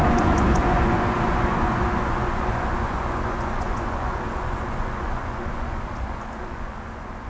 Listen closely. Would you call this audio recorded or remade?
remade